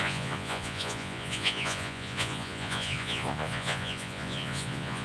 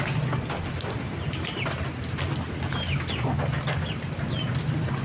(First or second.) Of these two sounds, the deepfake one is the first